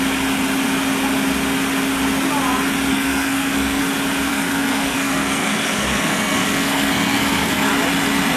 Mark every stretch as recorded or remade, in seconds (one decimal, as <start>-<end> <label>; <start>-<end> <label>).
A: 0.0-2.9 recorded; 2.9-3.8 remade; 3.8-4.3 recorded; 4.3-7.7 remade; 7.7-8.4 recorded